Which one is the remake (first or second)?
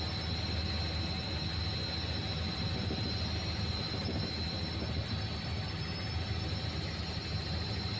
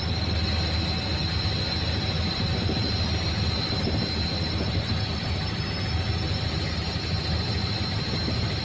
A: second